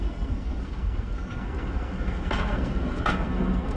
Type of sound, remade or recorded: remade